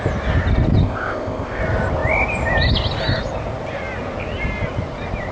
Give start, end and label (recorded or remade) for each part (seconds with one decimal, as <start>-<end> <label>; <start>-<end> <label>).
0.0-0.8 recorded; 0.8-1.6 remade; 1.6-5.3 recorded